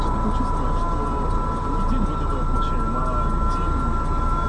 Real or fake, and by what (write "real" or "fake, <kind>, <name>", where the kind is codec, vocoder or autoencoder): real